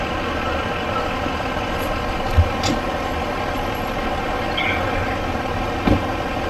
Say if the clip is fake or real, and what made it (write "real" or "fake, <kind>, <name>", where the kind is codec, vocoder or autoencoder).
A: real